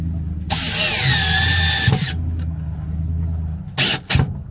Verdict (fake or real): real